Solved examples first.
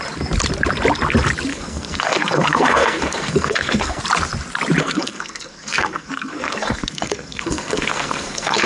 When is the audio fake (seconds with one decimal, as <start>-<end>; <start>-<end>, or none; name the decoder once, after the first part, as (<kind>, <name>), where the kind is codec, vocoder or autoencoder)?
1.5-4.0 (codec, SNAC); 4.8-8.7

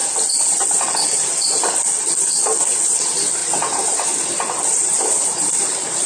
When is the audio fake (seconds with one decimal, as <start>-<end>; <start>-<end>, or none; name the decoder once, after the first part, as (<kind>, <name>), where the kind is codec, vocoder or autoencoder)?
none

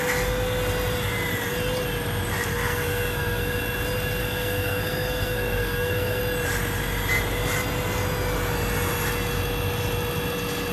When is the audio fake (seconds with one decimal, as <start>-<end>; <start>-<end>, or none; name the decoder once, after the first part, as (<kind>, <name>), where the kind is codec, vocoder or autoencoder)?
2.5-3.6 (codec, SNAC); 4.2-6.2

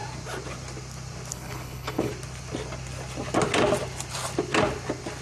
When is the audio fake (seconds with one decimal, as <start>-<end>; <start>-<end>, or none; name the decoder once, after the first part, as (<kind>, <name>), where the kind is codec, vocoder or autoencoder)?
1.3-2.1 (codec, HILCodec)